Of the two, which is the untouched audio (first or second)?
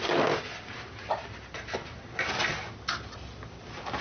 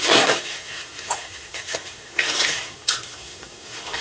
first